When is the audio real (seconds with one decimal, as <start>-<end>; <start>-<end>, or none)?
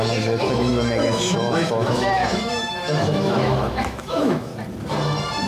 4.5-5.5